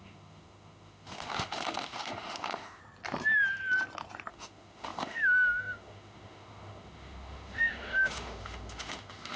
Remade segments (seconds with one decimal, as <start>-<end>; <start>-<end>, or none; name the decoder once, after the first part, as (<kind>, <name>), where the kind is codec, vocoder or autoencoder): 0.0-2.8 (autoencoder, DAC-VAE); 4.3-9.4